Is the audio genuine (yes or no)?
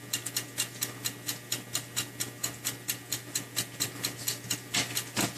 yes